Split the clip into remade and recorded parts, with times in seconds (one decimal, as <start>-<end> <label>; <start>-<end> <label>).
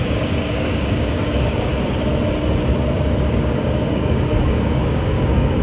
0.0-1.7 remade; 1.7-3.3 recorded; 3.3-5.6 remade